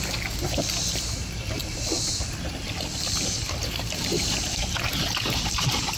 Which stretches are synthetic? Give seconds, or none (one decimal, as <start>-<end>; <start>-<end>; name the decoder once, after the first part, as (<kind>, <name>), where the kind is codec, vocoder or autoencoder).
1.6-4.7 (vocoder, BigVGAN v2)